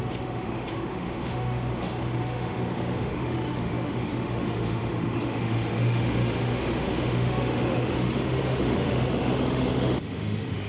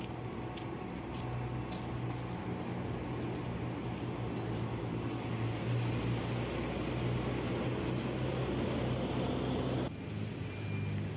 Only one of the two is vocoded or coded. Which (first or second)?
first